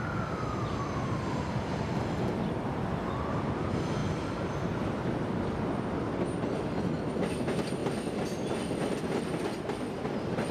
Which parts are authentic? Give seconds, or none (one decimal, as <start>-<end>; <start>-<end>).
0.0-10.5